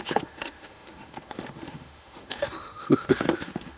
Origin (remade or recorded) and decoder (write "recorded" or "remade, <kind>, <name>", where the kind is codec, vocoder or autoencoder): remade, autoencoder, DAC-VAE